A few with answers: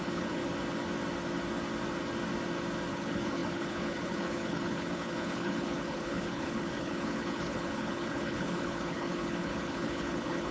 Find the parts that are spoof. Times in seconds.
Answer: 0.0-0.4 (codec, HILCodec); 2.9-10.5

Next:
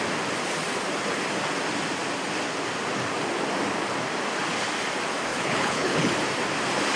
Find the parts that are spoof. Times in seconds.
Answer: 5.3-6.1 (codec, HILCodec)

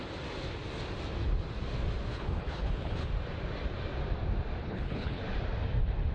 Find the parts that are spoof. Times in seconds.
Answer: 2.1-3.1 (codec, HILCodec); 4.6-5.2

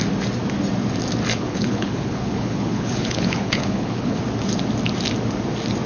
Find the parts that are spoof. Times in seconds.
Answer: 1.3-4.2 (codec, HILCodec)

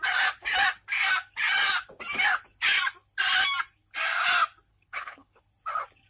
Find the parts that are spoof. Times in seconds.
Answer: 4.7-5.4 (codec, HILCodec)

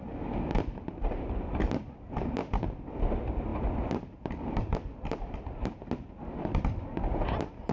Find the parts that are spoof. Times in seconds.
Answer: none